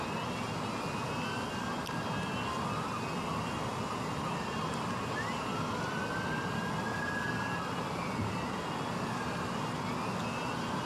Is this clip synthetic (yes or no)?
no